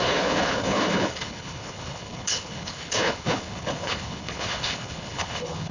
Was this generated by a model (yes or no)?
yes